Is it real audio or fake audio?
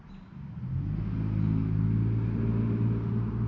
real